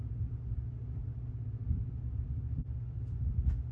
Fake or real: real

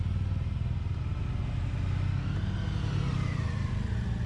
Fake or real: real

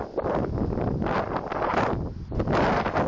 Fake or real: real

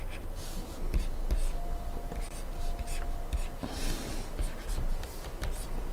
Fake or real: real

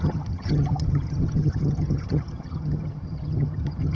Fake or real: fake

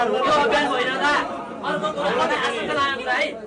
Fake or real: real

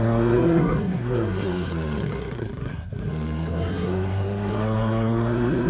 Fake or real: fake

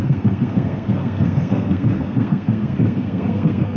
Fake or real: fake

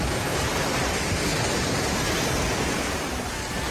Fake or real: real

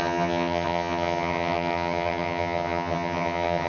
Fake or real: fake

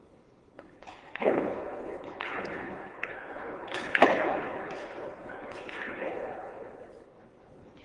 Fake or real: fake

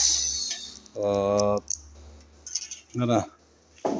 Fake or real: real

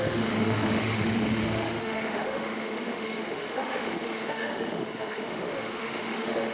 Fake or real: fake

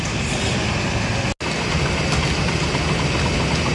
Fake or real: real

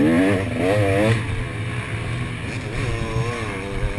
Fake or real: real